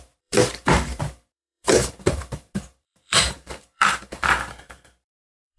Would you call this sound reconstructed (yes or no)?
yes